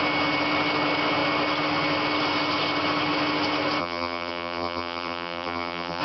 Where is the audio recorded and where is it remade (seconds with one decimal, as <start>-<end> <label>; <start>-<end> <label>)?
0.0-3.8 recorded; 3.8-6.0 remade